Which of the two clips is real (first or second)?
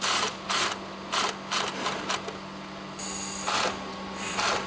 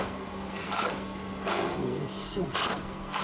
first